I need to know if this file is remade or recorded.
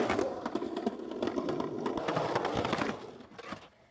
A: recorded